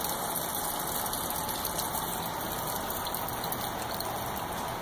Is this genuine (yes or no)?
yes